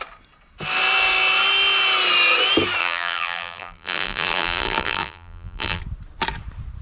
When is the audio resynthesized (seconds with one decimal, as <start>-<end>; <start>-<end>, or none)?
2.8-5.8